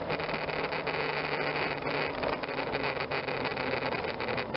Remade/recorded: recorded